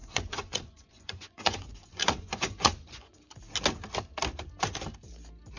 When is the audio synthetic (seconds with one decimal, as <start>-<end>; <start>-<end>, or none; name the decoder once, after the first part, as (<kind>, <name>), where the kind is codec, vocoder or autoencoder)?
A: 0.0-3.4 (vocoder, Vocos)